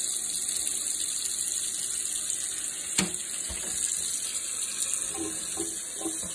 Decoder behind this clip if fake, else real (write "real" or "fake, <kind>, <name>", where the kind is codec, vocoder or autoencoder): real